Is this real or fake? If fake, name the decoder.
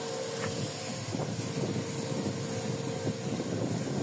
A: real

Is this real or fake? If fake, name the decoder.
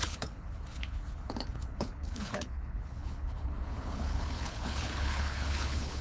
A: fake, codec, HILCodec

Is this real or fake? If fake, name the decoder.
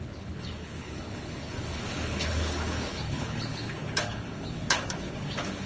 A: fake, codec, HILCodec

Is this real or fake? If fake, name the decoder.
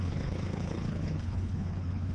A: fake, codec, HILCodec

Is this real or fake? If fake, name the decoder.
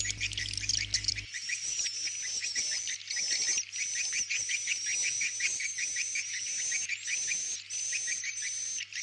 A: real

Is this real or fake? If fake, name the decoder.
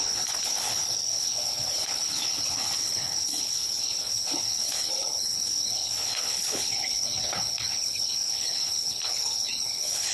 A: fake, codec, HILCodec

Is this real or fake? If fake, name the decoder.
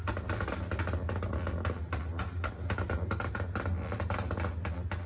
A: real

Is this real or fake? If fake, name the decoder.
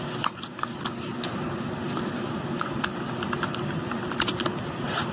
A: real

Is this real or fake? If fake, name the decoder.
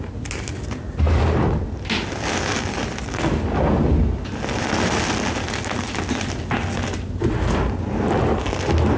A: real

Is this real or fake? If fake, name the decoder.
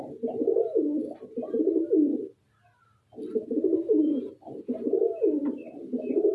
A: real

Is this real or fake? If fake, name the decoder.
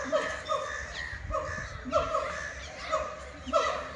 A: real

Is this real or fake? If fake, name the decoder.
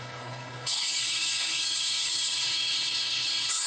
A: fake, codec, HILCodec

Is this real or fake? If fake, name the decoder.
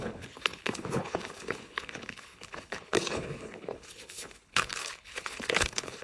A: fake, codec, HILCodec